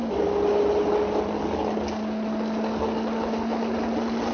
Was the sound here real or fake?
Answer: real